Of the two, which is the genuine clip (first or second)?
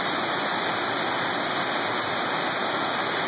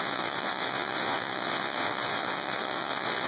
first